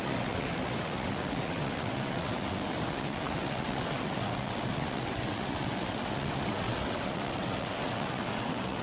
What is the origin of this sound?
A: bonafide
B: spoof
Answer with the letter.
B